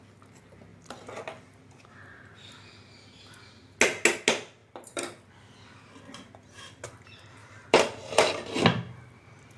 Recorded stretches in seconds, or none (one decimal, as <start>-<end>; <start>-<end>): 0.0-0.7; 1.6-4.6; 5.3-7.4; 8.3-9.6